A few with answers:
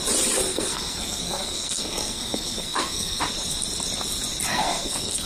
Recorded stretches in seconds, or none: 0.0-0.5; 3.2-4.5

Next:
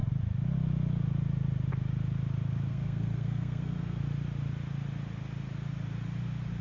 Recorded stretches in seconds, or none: 0.0-2.7; 4.0-6.6

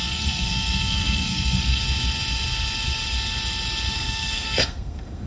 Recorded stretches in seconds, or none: 1.8-3.9